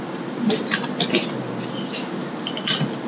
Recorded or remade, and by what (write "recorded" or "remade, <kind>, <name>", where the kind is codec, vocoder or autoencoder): recorded